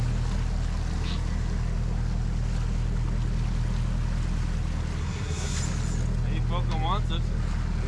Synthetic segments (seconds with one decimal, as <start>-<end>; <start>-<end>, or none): 5.0-5.6

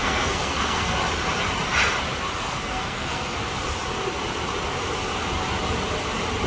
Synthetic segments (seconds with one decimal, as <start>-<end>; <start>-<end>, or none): 0.0-1.0; 2.4-3.4